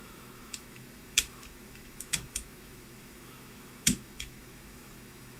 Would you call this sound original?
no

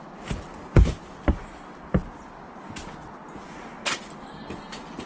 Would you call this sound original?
yes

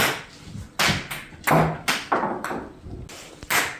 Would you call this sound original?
yes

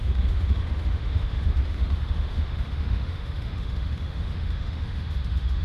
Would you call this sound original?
no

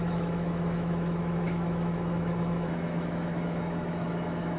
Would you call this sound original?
no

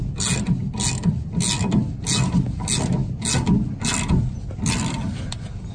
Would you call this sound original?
yes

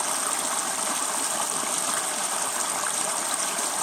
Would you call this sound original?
yes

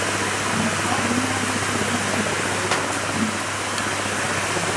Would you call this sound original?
yes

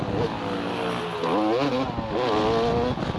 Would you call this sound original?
yes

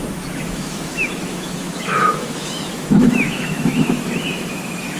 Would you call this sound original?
no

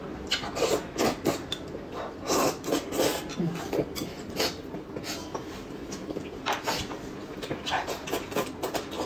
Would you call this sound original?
yes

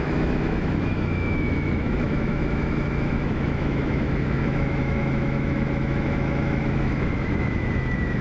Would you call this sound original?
no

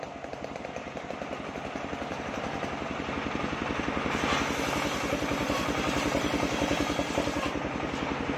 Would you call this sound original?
yes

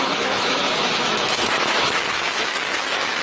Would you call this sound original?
no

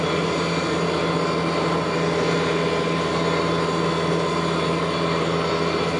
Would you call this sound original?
yes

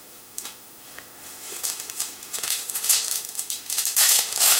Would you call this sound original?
no